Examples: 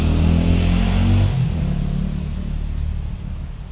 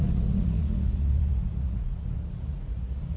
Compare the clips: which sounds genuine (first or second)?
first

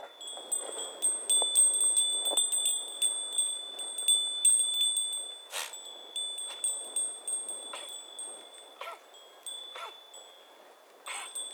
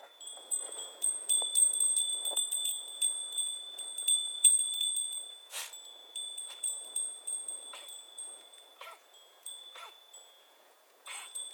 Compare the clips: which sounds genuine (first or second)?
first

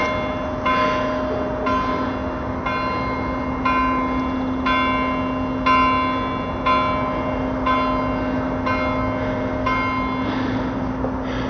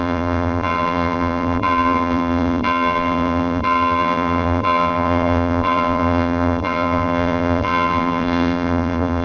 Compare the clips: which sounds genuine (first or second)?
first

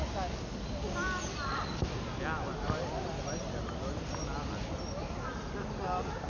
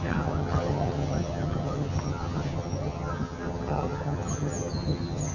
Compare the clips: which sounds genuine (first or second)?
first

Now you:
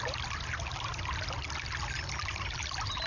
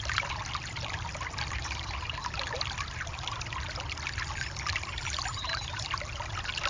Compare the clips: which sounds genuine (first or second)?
first